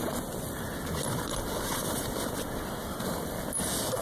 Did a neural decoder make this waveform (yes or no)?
no